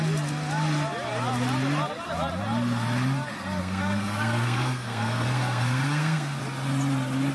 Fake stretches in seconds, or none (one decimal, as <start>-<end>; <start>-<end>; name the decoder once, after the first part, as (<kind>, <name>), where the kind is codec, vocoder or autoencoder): 3.6-6.4 (codec, SNAC)